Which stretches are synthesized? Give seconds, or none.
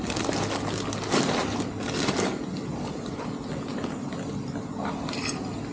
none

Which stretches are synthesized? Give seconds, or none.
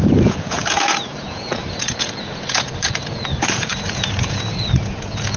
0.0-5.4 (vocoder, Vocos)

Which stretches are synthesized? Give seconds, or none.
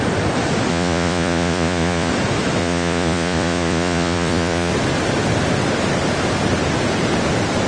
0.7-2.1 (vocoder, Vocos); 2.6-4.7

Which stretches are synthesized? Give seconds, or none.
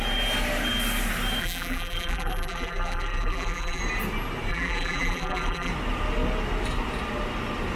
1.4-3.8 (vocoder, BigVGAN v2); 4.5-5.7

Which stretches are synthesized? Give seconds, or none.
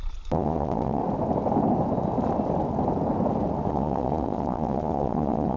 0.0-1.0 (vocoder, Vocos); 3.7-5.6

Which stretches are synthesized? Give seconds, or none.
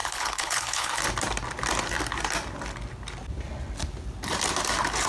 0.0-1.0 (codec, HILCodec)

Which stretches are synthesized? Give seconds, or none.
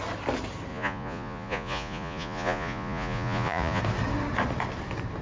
0.7-3.8 (vocoder, Vocos)